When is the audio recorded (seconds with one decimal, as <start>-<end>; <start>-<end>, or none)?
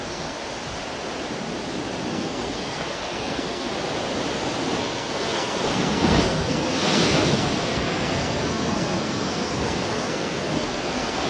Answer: 0.4-2.1; 3.7-4.8